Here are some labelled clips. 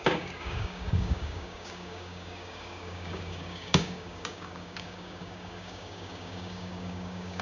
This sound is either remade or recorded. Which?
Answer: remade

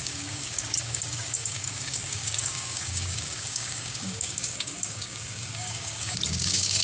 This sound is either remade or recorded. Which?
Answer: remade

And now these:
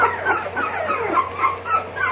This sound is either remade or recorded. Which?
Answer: recorded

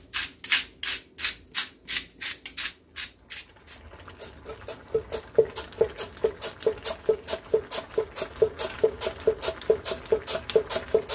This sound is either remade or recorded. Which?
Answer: recorded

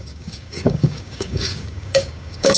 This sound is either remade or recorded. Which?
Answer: remade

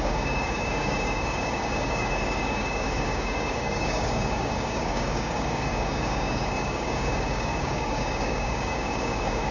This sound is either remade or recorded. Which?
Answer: remade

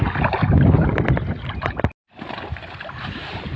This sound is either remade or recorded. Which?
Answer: recorded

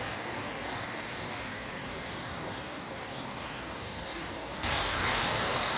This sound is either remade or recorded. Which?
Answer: remade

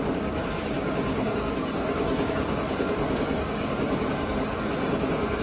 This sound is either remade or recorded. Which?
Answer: remade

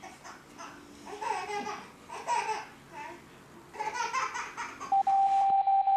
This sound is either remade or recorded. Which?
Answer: recorded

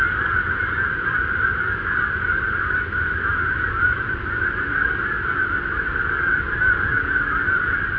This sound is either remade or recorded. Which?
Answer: recorded